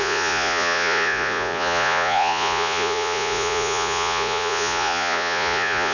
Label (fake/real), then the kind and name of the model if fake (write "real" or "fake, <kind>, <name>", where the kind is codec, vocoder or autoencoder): fake, vocoder, Vocos